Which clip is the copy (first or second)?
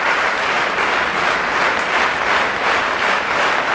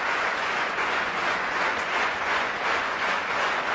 second